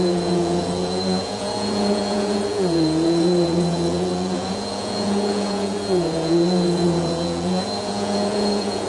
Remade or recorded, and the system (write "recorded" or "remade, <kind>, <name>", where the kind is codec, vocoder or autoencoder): remade, vocoder, Vocos